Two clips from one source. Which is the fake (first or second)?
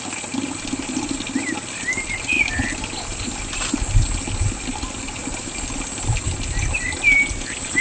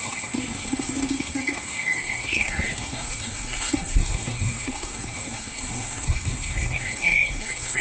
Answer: second